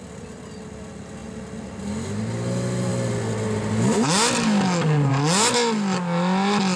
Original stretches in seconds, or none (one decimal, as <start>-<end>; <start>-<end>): 0.0-6.8